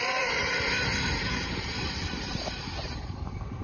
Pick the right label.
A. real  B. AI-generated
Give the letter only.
B